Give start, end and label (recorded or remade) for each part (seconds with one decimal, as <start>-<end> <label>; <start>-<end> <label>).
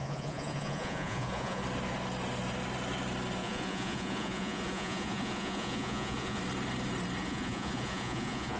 0.0-1.6 remade; 1.6-3.4 recorded; 3.4-6.4 remade; 6.4-7.2 recorded; 7.2-8.6 remade